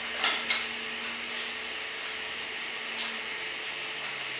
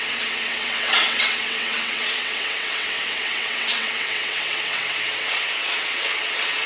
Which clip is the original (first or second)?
first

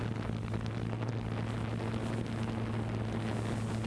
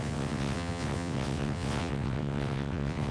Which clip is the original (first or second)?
first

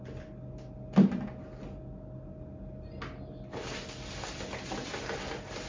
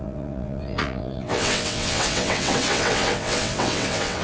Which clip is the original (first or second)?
first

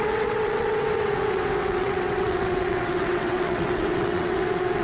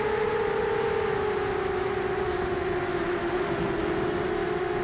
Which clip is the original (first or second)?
second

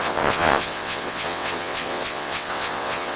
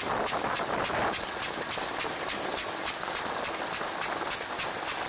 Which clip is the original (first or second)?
second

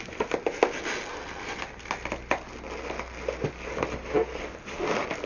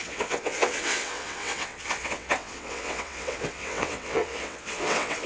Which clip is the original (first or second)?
first